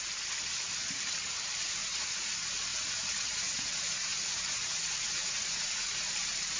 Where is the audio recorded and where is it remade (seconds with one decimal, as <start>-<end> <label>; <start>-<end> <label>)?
0.0-1.8 recorded; 1.8-2.3 remade; 2.3-2.7 recorded; 2.7-6.1 remade; 6.1-6.6 recorded

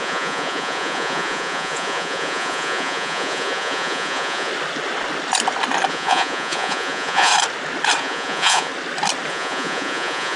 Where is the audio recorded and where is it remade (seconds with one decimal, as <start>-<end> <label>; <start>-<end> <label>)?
0.0-4.5 remade; 4.5-5.9 recorded; 5.9-7.3 remade; 7.3-8.0 recorded; 8.0-8.7 remade; 8.7-9.3 recorded; 9.3-10.4 remade

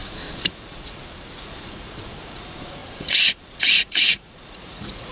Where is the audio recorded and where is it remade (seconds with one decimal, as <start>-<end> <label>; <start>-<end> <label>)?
0.0-5.1 remade

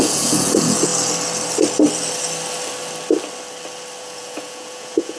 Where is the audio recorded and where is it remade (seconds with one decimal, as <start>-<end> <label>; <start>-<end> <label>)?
0.0-0.9 remade; 0.9-4.0 recorded; 4.0-5.2 remade

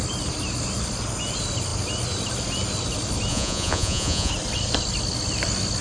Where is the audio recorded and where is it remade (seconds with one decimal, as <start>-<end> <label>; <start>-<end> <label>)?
0.0-3.3 recorded; 3.3-4.3 remade; 4.3-5.8 recorded

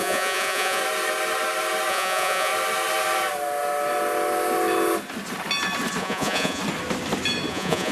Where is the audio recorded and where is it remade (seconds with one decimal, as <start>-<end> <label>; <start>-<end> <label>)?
0.0-0.8 remade; 0.8-1.9 recorded; 1.9-2.5 remade; 2.5-6.0 recorded; 6.0-6.6 remade; 6.6-7.5 recorded; 7.5-7.9 remade

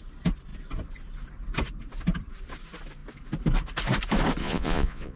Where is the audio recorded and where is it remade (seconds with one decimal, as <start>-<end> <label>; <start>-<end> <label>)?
0.0-4.4 recorded; 4.4-5.2 remade